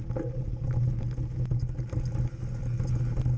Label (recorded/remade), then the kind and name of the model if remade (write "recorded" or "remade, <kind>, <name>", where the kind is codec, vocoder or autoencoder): recorded